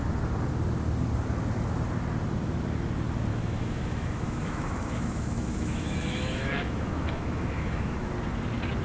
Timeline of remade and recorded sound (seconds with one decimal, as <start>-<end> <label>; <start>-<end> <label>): 0.0-3.3 recorded; 3.3-8.1 remade; 8.1-8.8 recorded